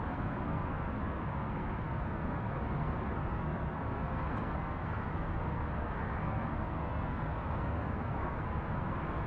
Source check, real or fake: fake